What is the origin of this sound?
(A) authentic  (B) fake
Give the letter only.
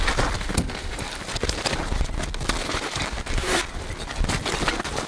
A